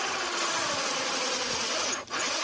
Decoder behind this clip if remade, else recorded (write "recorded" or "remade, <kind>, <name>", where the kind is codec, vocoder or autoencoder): recorded